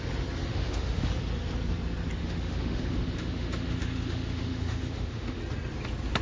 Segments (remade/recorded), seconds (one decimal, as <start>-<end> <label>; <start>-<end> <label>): 0.0-0.5 recorded; 0.5-1.1 remade; 1.1-2.2 recorded; 2.2-5.4 remade; 5.4-6.2 recorded